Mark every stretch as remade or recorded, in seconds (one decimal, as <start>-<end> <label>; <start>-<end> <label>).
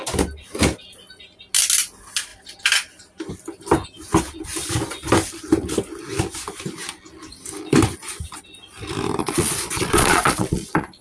0.0-9.2 recorded; 9.2-11.0 remade